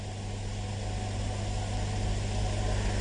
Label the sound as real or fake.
real